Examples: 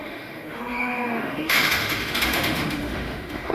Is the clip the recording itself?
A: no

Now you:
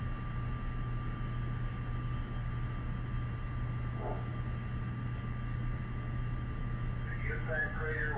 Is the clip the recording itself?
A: yes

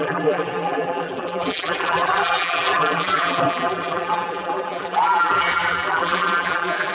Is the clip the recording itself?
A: no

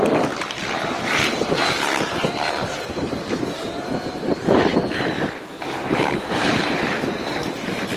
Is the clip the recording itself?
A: no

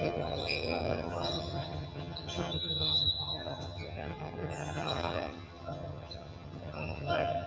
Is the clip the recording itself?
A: no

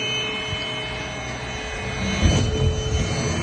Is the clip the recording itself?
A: yes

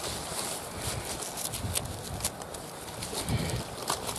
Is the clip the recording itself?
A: yes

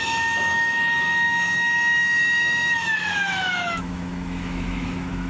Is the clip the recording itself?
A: no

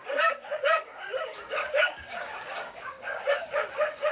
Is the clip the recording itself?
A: no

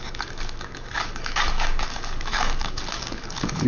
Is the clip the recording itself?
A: no